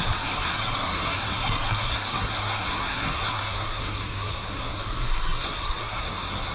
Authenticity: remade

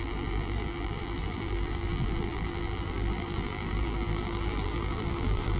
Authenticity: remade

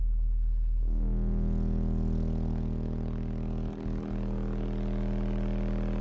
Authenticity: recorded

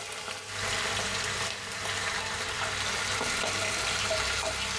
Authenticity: recorded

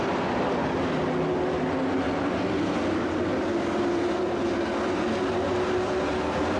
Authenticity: recorded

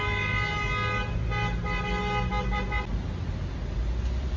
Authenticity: recorded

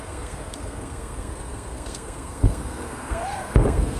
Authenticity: remade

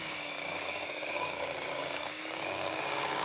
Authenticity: remade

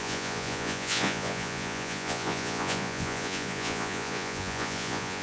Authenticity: remade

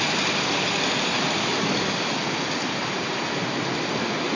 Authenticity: recorded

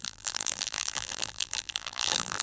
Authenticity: remade